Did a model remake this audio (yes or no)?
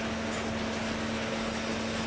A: no